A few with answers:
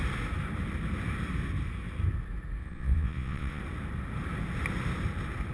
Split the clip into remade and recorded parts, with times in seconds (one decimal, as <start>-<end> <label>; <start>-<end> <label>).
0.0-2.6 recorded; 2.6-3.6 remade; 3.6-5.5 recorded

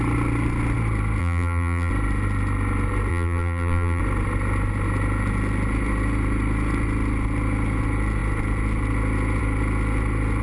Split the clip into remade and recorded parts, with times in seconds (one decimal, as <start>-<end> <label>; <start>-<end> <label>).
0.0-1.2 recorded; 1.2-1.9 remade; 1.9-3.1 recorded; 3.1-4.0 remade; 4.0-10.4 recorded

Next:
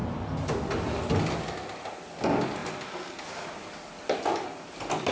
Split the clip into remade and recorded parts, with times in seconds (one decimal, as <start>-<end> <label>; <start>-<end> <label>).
0.0-5.1 recorded

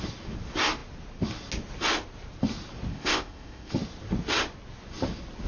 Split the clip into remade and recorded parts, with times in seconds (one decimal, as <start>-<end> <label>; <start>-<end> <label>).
0.0-2.9 recorded; 2.9-3.7 remade; 3.7-5.5 recorded

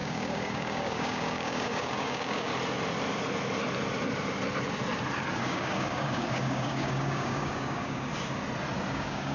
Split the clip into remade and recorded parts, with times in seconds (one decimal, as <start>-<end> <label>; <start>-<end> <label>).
0.0-2.5 remade; 2.5-5.4 recorded; 5.4-8.1 remade; 8.1-8.9 recorded; 8.9-9.3 remade